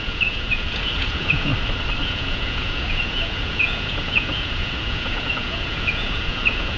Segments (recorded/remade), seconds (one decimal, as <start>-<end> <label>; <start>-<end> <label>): 0.0-1.5 remade; 1.5-2.0 recorded; 2.0-6.8 remade